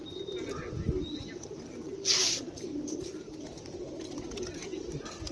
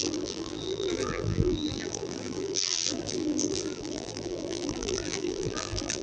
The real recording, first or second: first